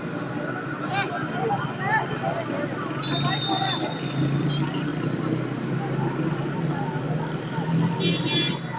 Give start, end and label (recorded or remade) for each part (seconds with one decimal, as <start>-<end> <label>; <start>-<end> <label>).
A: 0.0-8.8 recorded